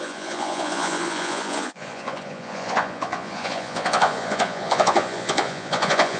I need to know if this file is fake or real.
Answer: fake